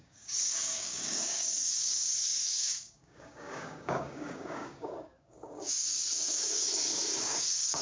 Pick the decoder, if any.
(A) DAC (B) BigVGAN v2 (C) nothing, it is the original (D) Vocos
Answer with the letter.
A